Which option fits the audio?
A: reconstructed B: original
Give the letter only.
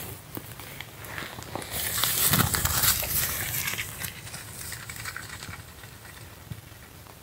B